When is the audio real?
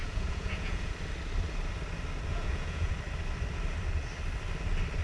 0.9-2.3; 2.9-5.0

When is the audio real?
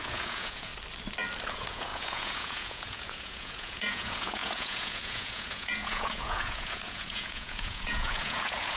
0.7-1.5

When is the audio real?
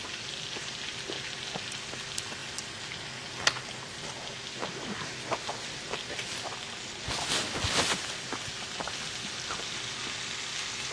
0.0-10.9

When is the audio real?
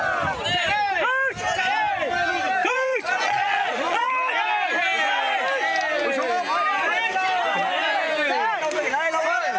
0.0-2.6; 4.1-9.6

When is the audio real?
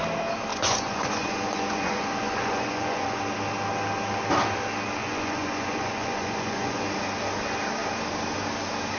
0.0-0.5; 3.2-5.0; 6.8-9.0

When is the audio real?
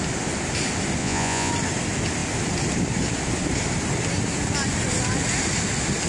0.0-1.0; 1.5-6.1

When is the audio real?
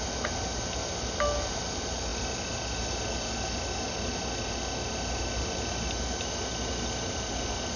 0.0-7.8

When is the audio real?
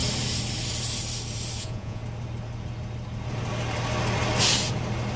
0.0-1.6; 2.0-5.2